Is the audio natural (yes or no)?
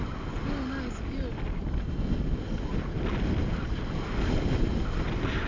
yes